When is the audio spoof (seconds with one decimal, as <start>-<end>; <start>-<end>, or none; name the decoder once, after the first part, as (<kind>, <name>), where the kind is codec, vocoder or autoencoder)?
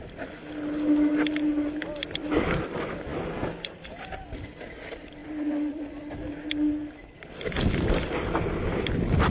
2.2-2.7 (vocoder, BigVGAN v2); 5.2-6.1